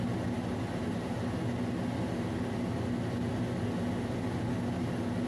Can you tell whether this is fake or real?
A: real